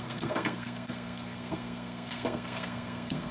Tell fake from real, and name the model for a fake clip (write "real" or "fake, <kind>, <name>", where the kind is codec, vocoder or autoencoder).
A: fake, codec, SNAC